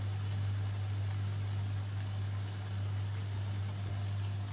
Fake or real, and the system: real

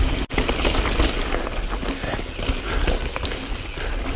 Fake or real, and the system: real